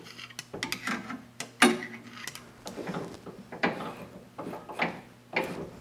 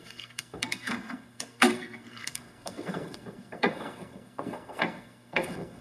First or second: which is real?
first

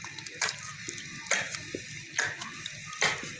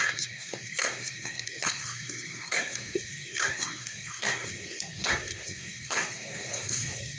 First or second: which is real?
first